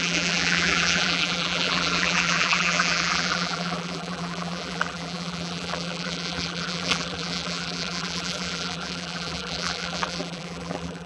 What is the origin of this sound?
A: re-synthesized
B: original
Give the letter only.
A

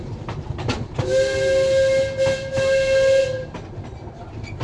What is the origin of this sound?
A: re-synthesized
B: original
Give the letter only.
B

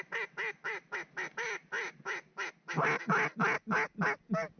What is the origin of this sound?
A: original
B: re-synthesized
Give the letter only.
A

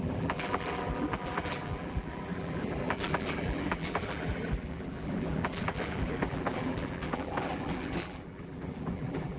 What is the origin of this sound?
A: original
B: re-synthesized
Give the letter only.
B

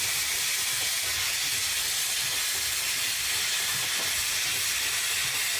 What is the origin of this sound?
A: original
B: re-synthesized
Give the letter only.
A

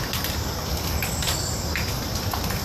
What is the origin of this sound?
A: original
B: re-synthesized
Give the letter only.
B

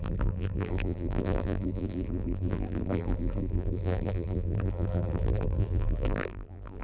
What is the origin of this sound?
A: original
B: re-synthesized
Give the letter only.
B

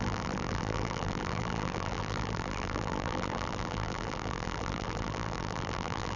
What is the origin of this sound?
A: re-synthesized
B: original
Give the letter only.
A